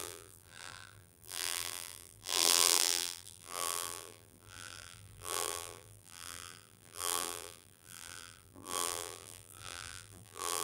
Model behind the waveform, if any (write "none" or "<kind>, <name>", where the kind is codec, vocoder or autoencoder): vocoder, BigVGAN v2